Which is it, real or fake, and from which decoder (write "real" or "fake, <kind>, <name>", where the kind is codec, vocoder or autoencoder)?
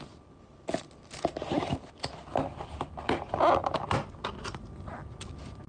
real